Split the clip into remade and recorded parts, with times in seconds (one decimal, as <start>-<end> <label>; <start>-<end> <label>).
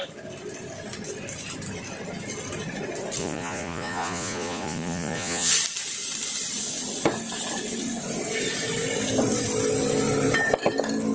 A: 0.0-3.2 recorded; 3.2-5.5 remade; 5.5-11.1 recorded